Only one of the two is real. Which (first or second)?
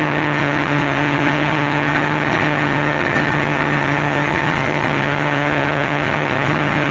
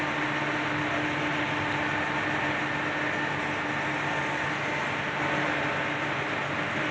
second